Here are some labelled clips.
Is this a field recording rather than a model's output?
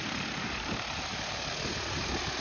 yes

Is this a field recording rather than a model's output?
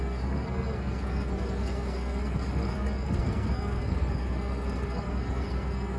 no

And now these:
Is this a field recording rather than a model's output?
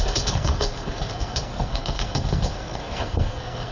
no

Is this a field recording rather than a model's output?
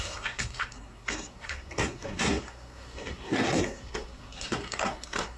no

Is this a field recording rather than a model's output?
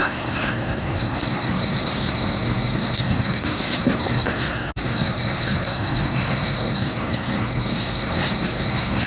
no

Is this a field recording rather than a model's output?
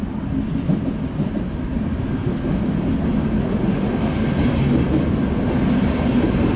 yes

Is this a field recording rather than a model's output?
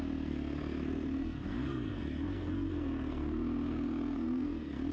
no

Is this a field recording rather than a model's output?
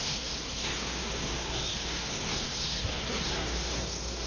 no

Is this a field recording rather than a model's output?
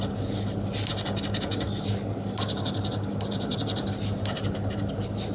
yes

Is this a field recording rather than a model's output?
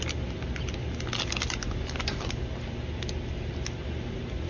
yes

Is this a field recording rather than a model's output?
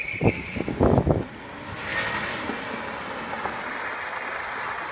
yes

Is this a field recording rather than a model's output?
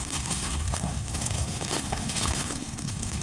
no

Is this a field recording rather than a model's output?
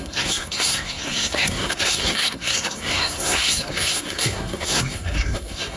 no